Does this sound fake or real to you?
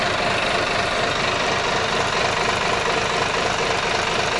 real